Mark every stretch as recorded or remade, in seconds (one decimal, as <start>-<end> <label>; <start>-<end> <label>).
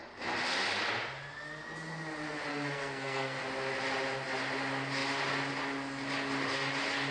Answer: 0.0-2.5 recorded; 2.5-3.4 remade; 3.4-7.1 recorded